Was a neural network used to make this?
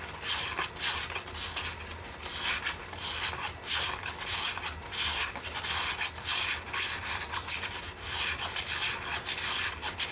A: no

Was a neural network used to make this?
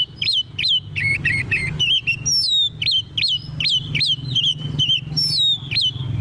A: no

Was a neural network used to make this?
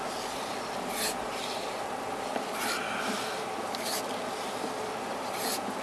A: no